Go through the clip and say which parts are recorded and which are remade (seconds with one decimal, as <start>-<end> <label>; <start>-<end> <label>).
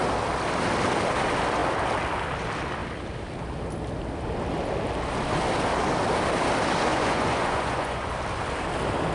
0.0-6.9 recorded; 6.9-8.1 remade; 8.1-9.1 recorded